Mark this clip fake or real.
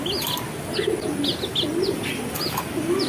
real